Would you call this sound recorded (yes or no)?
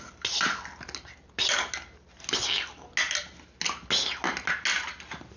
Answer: yes